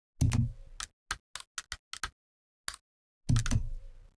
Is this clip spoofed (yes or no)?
no